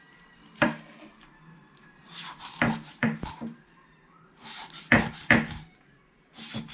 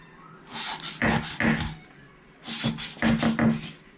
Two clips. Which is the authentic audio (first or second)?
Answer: second